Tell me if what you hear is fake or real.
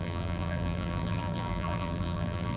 fake